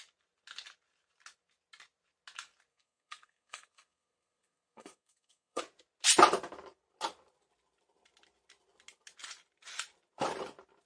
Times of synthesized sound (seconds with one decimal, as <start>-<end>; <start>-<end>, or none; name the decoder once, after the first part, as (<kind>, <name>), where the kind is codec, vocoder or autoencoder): 2.7-5.6 (codec, SNAC)